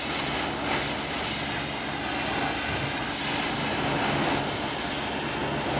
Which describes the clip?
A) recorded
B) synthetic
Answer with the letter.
A